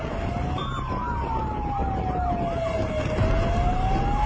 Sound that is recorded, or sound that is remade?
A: recorded